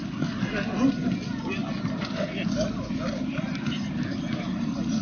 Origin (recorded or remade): recorded